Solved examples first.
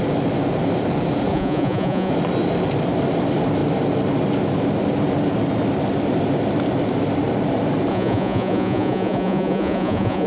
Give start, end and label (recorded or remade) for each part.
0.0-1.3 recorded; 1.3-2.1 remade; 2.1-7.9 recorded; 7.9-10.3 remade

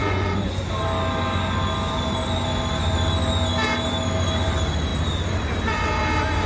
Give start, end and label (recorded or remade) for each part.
0.0-0.6 remade; 0.6-6.5 recorded